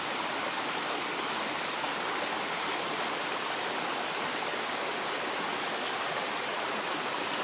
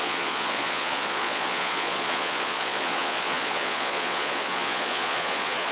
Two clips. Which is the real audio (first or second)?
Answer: first